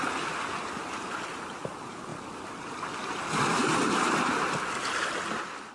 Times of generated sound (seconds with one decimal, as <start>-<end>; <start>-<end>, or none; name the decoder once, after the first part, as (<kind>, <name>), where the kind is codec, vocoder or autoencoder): none